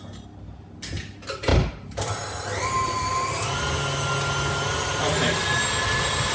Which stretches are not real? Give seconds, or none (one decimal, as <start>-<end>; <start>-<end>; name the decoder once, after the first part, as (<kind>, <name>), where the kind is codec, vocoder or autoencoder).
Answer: none